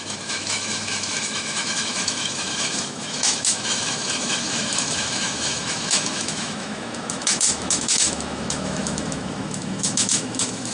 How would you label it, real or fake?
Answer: fake